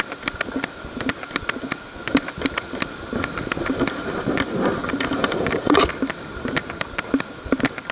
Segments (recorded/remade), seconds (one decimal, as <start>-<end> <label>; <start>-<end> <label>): 0.0-4.8 recorded; 4.8-5.8 remade; 5.8-7.9 recorded